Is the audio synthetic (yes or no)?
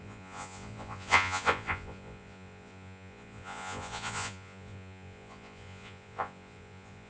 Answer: yes